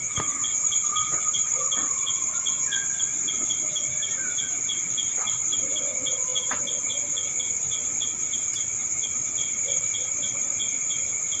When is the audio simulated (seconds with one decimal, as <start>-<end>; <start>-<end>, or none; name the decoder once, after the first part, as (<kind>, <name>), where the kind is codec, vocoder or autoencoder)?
none